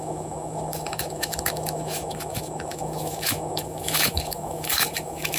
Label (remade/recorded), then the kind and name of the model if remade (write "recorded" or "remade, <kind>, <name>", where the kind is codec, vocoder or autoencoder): remade, autoencoder, DAC-VAE